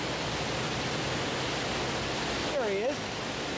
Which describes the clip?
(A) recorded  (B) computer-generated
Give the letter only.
A